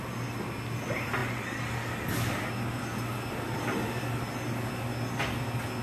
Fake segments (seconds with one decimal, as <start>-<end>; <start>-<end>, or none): none